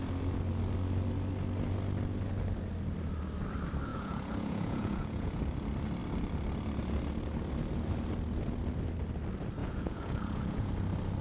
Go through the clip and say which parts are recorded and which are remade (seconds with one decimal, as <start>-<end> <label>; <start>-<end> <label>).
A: 0.0-3.9 recorded; 3.9-5.4 remade; 5.4-9.6 recorded; 9.6-10.7 remade; 10.7-11.2 recorded

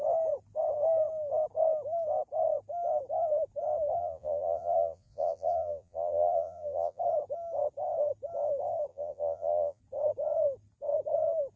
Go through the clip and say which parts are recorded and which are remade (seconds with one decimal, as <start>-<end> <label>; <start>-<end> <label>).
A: 0.0-4.0 recorded; 4.0-7.0 remade; 7.0-8.9 recorded; 8.9-9.8 remade; 9.8-11.6 recorded

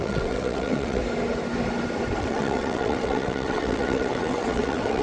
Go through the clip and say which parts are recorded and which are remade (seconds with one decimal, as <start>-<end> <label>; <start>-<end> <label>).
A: 0.0-1.0 remade; 1.0-2.2 recorded; 2.2-5.0 remade